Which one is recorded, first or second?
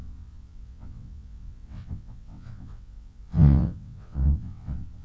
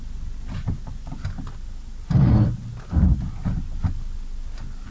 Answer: second